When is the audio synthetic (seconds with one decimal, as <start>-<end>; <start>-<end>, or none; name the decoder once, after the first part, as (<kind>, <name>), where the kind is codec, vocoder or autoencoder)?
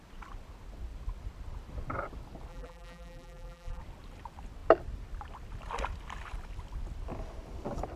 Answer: 2.5-3.8 (vocoder, BigVGAN v2)